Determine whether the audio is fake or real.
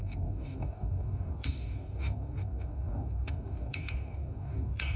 fake